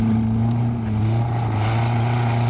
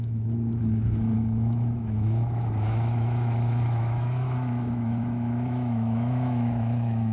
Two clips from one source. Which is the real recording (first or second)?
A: first